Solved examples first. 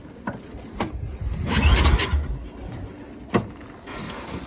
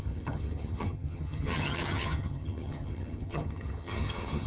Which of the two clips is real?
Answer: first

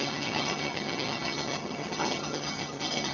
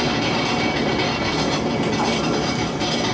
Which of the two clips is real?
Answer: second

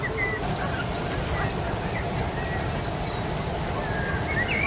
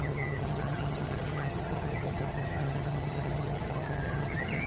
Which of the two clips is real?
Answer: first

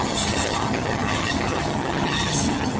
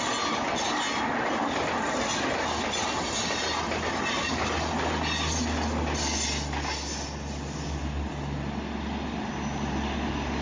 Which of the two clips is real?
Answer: second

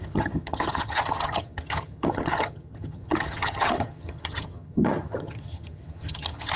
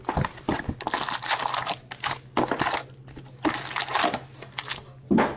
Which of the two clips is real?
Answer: second